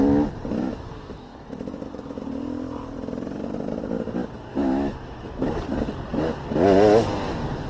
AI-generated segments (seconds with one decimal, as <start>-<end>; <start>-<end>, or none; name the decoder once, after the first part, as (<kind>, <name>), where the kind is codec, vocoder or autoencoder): 0.7-2.2 (autoencoder, DAC-VAE); 4.5-5.4